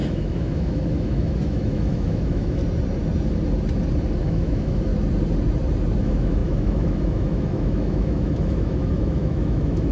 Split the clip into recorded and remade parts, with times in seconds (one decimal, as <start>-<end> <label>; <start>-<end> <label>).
0.0-2.6 remade; 2.6-4.2 recorded; 4.2-4.9 remade; 4.9-6.0 recorded; 6.0-9.9 remade